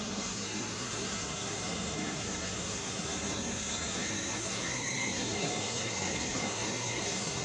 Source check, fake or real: fake